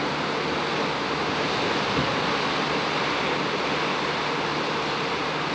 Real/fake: real